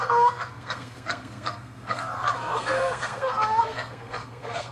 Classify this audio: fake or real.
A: fake